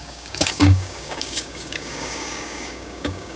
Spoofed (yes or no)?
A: yes